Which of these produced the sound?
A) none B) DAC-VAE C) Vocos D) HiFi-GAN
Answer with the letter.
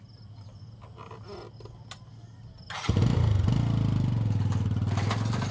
A